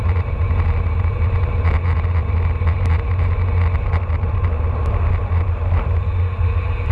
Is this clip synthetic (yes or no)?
no